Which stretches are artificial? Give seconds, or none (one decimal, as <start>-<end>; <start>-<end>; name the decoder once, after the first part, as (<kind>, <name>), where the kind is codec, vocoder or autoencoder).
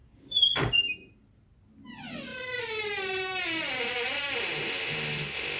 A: 0.0-0.7 (vocoder, BigVGAN v2); 2.3-3.4